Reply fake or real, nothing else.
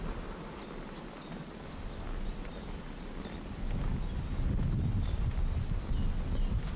real